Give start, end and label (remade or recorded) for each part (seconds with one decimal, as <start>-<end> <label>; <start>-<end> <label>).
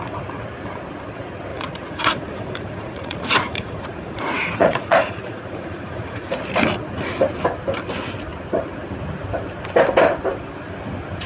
0.0-1.5 recorded; 1.5-6.4 remade; 6.4-11.3 recorded